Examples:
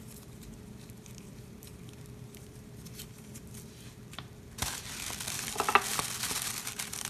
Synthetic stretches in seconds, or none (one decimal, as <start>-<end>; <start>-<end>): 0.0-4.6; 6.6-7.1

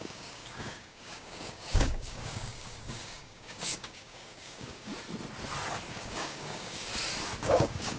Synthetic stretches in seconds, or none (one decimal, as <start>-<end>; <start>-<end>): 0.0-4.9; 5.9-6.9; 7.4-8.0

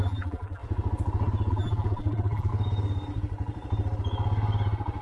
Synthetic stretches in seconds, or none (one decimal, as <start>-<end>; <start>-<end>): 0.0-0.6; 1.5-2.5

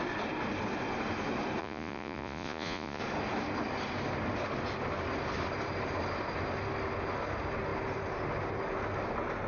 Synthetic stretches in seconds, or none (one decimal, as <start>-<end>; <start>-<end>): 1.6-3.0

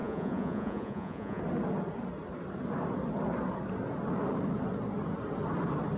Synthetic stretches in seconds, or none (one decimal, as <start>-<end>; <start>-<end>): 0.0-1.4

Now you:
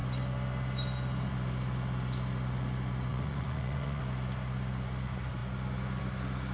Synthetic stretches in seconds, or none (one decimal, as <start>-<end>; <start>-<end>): 3.1-4.0

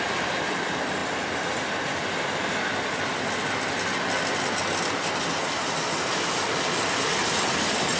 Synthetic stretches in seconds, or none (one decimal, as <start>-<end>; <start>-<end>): none